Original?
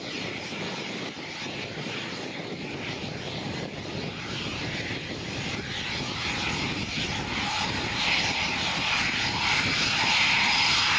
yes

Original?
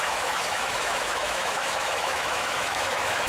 no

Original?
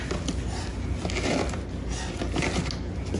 yes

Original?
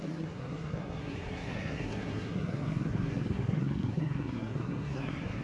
no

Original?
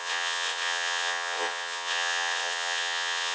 no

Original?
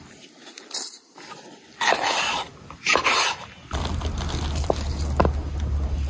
yes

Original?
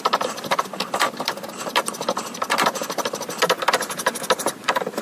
yes